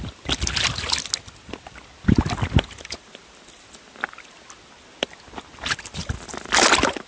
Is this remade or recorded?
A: recorded